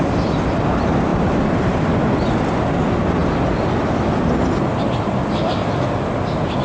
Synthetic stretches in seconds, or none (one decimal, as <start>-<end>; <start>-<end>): 0.0-3.2; 4.4-6.6